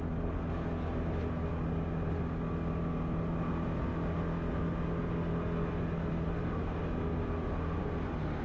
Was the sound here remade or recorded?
recorded